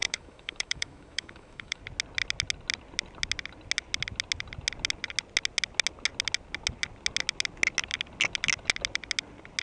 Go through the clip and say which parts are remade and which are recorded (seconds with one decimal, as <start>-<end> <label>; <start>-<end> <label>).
0.0-1.8 remade; 1.8-9.6 recorded